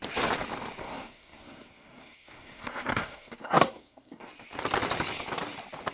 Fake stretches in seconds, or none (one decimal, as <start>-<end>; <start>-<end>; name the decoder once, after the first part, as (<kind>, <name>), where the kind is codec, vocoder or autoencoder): 0.8-4.3 (codec, SNAC)